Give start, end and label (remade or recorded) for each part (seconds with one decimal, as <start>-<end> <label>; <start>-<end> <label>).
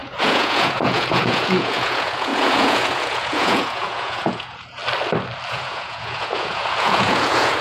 0.0-4.8 remade; 4.8-5.5 recorded; 5.5-7.6 remade